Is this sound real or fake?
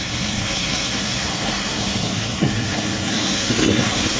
fake